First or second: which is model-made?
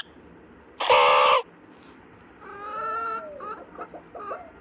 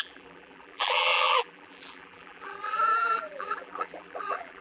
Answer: second